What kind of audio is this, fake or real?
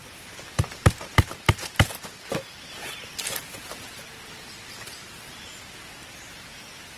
real